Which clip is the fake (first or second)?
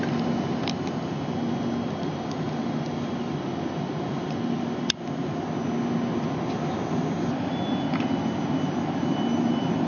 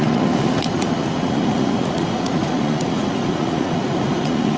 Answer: second